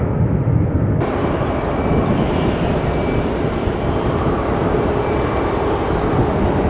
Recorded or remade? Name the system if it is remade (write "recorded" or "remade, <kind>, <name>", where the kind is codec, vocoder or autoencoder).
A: recorded